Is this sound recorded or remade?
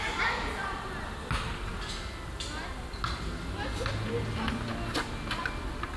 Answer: recorded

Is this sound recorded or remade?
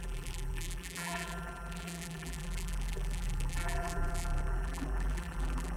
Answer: remade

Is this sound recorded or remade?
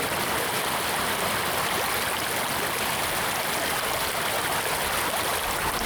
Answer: recorded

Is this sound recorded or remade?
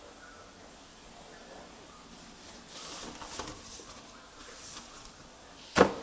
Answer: recorded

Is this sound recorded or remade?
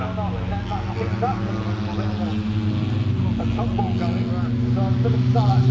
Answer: recorded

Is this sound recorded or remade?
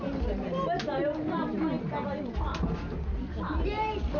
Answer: recorded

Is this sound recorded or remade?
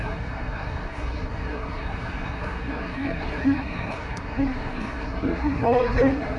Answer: remade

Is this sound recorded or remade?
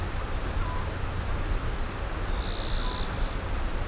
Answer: recorded